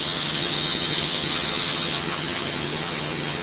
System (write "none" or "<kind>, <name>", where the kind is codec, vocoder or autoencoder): vocoder, HiFi-GAN